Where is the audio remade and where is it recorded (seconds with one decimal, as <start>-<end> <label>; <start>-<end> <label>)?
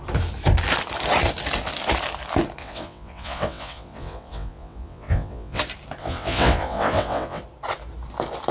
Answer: 0.0-2.6 recorded; 2.6-5.6 remade; 5.6-6.0 recorded; 6.0-7.4 remade; 7.4-8.5 recorded